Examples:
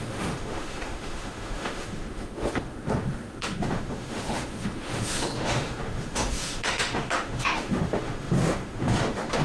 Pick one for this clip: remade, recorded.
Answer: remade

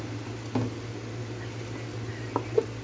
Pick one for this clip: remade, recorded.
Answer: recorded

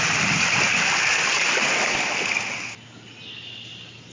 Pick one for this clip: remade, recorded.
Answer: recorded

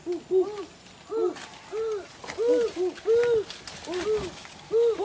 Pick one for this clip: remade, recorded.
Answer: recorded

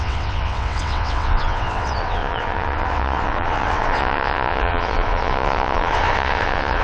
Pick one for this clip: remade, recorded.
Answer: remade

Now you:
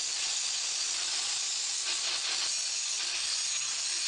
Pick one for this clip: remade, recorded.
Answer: recorded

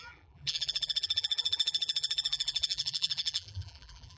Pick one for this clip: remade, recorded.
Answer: remade